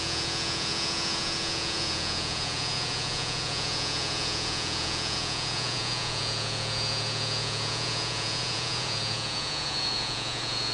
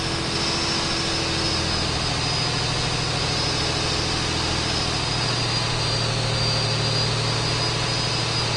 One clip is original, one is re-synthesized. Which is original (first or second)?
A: second